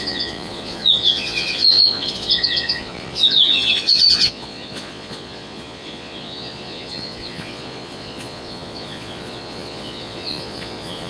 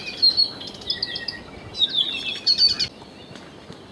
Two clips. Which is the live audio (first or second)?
second